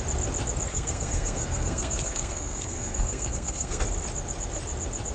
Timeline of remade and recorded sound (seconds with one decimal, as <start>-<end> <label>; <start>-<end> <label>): 0.0-0.7 recorded; 0.7-3.8 remade; 3.8-5.1 recorded